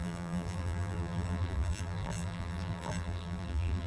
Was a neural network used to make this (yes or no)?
yes